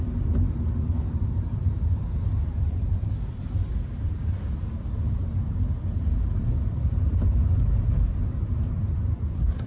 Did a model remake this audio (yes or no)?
no